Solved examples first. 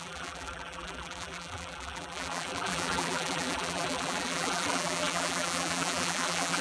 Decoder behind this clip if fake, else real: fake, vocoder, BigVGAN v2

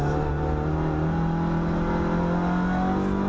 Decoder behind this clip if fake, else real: real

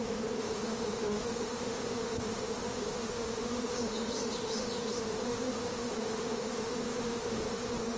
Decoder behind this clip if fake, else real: fake, autoencoder, DAC-VAE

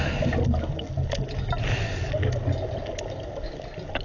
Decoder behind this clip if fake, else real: real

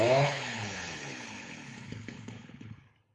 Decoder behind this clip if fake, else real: fake, codec, HILCodec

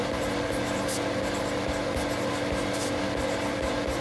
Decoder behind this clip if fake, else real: real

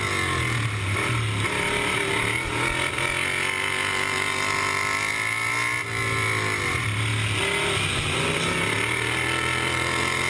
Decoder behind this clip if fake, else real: real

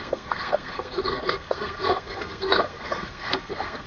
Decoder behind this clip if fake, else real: fake, codec, SNAC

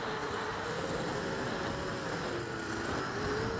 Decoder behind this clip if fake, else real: real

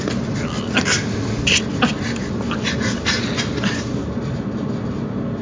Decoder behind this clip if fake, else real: real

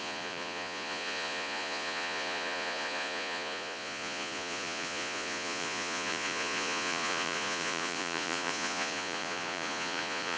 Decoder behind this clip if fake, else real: fake, vocoder, Vocos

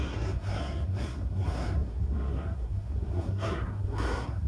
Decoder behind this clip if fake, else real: fake, codec, SNAC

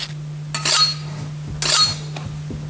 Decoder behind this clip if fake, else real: real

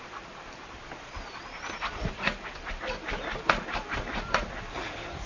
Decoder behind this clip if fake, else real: real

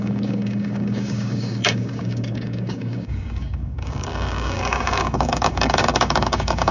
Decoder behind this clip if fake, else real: fake, codec, DAC